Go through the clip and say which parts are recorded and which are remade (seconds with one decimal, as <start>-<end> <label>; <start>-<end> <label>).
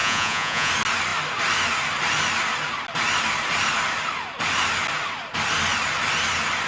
0.0-0.7 remade; 0.7-6.7 recorded